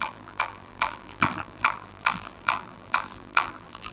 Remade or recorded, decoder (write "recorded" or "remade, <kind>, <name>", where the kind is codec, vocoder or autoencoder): remade, vocoder, BigVGAN v2